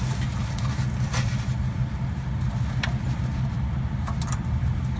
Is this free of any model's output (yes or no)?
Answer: yes